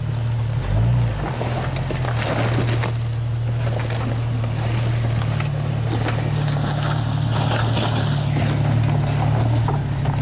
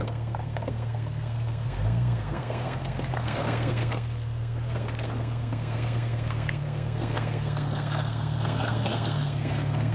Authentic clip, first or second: first